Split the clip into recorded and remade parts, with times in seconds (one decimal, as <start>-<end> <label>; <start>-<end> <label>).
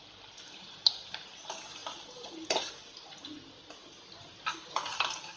0.0-5.4 recorded